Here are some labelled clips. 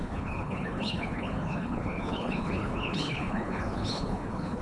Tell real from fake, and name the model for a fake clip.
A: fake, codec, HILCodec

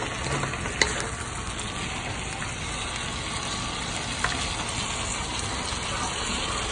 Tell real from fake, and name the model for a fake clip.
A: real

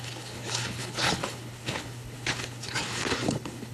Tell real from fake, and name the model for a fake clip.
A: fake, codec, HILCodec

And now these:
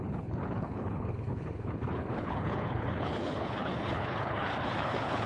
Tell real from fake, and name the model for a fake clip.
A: fake, codec, HILCodec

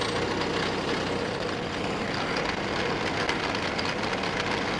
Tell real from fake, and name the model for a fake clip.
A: real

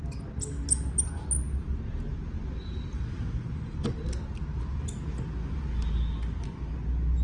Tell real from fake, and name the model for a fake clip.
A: real